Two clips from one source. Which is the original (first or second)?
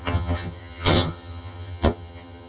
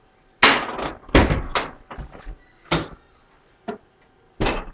second